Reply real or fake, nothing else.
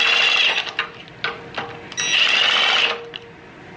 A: real